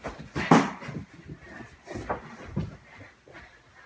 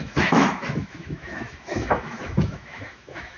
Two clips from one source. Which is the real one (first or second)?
first